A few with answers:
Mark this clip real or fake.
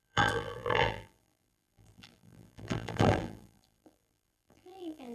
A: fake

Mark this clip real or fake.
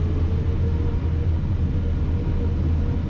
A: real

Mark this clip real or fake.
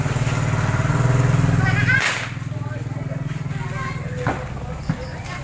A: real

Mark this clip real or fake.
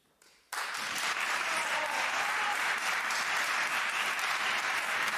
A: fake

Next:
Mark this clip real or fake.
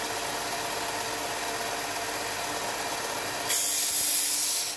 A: real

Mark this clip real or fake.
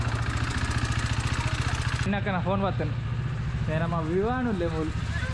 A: real